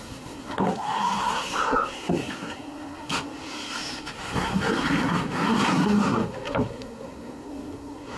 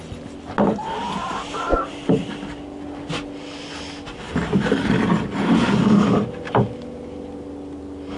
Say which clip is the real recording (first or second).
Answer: second